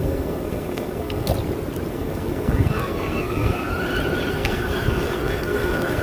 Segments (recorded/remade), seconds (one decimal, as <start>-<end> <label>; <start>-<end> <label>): 0.0-1.3 remade; 1.3-1.9 recorded; 1.9-3.7 remade; 3.7-4.3 recorded; 4.3-6.0 remade